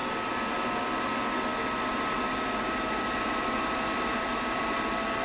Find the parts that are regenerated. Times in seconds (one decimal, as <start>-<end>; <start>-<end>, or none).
none